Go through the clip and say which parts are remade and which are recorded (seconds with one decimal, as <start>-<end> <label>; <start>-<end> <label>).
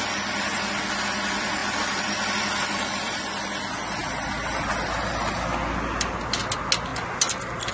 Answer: 0.0-1.6 recorded; 1.6-2.3 remade; 2.3-7.7 recorded